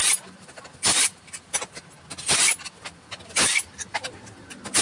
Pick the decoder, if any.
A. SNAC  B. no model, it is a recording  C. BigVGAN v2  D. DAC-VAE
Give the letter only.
B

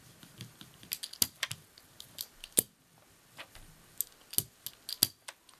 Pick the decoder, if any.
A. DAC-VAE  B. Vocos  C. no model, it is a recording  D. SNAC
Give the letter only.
C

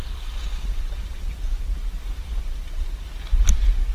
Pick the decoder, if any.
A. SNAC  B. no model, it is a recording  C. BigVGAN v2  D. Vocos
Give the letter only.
B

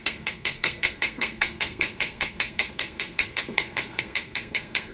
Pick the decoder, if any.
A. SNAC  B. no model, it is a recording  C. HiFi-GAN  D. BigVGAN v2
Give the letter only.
A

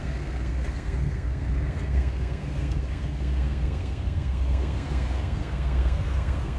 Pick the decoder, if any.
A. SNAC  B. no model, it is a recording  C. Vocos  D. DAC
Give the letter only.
A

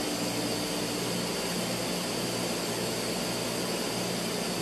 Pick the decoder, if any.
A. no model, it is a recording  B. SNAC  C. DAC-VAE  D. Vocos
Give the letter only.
A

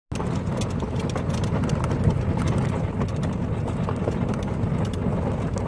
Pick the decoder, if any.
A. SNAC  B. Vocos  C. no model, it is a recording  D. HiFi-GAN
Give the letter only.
C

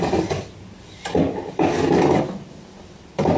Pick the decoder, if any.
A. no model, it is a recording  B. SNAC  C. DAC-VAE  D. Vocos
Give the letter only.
A